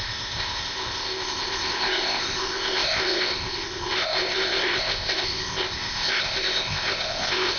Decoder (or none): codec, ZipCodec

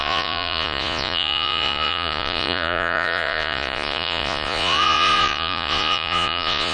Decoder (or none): vocoder, Vocos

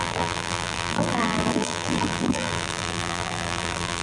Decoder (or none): vocoder, BigVGAN v2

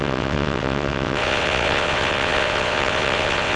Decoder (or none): vocoder, WaveNeXt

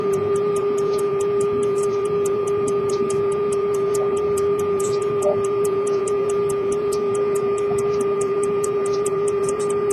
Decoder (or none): vocoder, Vocos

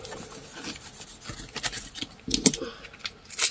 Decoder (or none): none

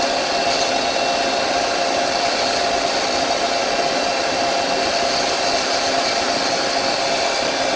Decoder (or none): none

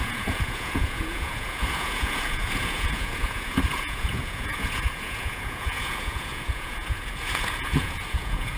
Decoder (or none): vocoder, Vocos